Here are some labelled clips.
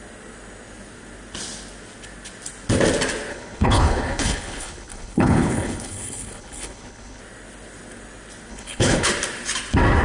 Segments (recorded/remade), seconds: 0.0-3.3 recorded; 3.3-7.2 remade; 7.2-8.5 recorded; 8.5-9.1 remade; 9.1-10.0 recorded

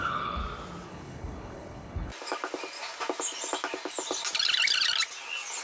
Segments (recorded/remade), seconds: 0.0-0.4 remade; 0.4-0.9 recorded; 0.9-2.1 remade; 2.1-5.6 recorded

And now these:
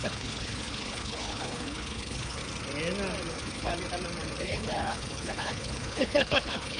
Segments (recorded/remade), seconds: 0.0-2.4 remade; 2.4-3.3 recorded; 3.3-3.7 remade; 3.7-4.4 recorded; 4.4-6.8 remade

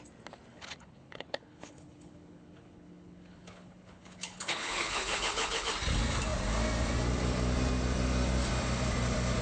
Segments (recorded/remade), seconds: 0.0-0.5 recorded; 0.5-5.7 remade; 5.7-9.4 recorded

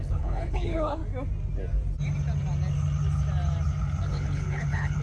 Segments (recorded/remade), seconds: 0.0-1.0 remade; 1.0-4.0 recorded; 4.0-5.0 remade

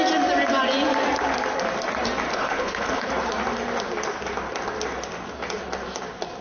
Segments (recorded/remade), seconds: 0.0-2.3 recorded; 2.3-3.1 remade; 3.1-6.4 recorded

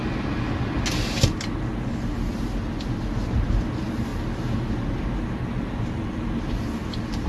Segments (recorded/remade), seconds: 0.0-7.3 recorded

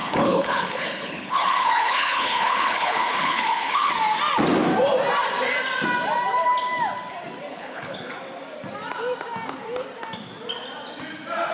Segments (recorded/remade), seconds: 0.0-3.9 remade; 3.9-7.5 recorded; 7.5-8.1 remade; 8.1-11.5 recorded